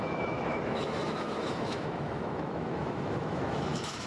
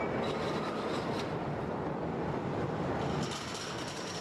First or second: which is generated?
first